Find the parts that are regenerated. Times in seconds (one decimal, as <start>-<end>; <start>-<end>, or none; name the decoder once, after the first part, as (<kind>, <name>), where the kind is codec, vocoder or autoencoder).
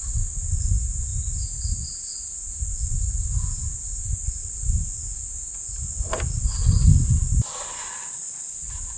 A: none